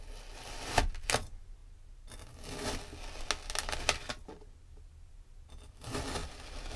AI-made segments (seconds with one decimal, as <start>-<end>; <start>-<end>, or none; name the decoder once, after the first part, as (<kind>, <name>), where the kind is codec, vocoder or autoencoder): none